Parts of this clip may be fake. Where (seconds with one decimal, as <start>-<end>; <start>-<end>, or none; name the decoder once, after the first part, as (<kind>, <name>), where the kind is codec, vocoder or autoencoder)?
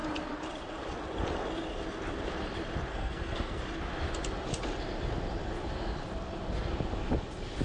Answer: 2.9-3.6 (codec, SNAC)